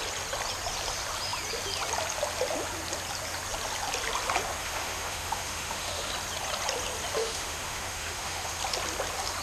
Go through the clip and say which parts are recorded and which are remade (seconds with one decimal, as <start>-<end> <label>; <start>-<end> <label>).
0.0-4.6 recorded; 4.6-6.1 remade; 6.1-7.2 recorded; 7.2-8.6 remade; 8.6-9.4 recorded